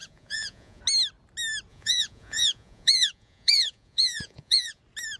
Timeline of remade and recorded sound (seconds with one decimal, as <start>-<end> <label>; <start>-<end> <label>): 0.0-0.8 remade; 0.8-1.7 recorded; 1.7-4.8 remade; 4.8-5.2 recorded